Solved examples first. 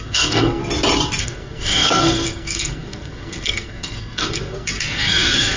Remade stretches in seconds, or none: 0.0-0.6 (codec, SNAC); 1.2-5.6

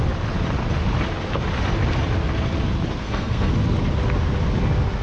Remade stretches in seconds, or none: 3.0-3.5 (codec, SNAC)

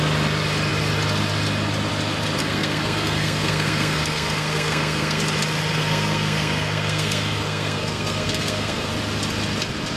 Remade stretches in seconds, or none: 2.4-5.2 (codec, SNAC); 5.7-8.9

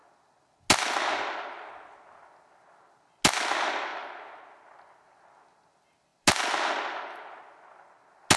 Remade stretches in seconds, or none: none

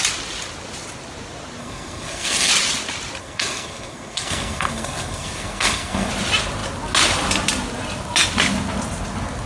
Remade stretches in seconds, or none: 1.6-2.5 (codec, SNAC); 3.2-6.1